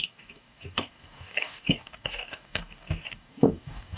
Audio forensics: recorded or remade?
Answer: remade